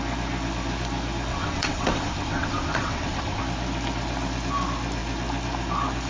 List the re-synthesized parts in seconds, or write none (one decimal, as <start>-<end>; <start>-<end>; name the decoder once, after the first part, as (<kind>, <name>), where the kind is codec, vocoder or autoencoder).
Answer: 1.3-3.4 (vocoder, WaveNeXt)